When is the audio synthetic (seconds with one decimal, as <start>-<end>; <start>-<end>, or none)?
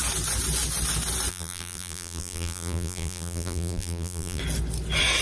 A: 1.3-4.4